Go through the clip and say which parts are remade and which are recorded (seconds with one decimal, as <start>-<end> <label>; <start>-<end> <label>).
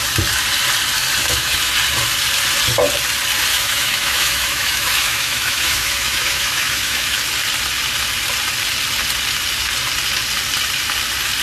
0.0-1.2 recorded; 1.2-1.7 remade; 1.7-3.5 recorded; 3.5-7.2 remade; 7.2-11.4 recorded